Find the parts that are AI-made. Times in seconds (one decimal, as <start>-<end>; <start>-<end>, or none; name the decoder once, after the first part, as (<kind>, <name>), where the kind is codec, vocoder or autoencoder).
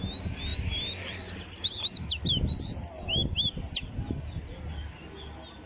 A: 0.5-1.7 (vocoder, BigVGAN v2)